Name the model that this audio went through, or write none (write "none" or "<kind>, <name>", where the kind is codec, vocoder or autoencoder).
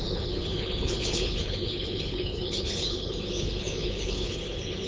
codec, HILCodec